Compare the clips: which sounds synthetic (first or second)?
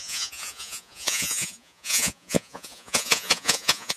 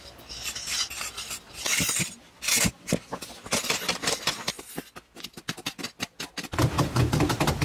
first